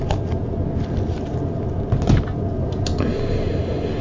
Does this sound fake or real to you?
real